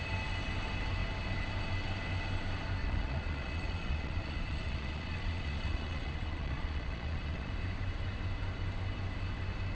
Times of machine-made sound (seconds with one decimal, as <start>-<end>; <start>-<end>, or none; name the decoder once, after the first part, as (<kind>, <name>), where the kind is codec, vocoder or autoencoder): 2.8-7.5 (vocoder, Vocos)